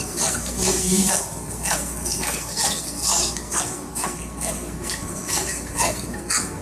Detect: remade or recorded remade